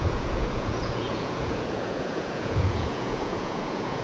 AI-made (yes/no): yes